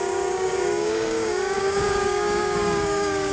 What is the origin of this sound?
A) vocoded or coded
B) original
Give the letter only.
A